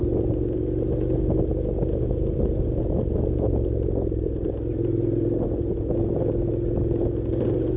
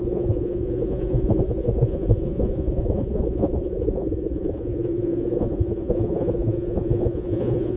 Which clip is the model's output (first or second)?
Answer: second